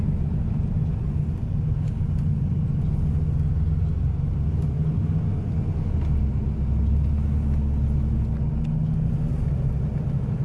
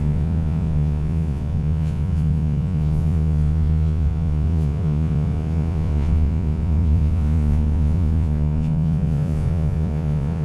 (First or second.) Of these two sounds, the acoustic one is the first